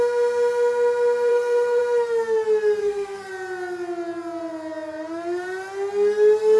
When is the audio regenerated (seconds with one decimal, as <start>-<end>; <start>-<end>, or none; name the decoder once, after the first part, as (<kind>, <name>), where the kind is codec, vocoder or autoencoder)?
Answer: 1.3-1.8 (codec, SNAC); 2.8-3.3